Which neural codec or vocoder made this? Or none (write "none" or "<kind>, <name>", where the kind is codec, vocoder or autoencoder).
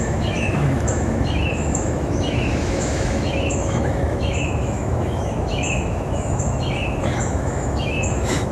autoencoder, DAC-VAE